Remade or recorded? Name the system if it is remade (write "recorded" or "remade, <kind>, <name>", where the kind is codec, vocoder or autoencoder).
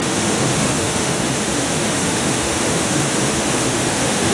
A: remade, autoencoder, DAC-VAE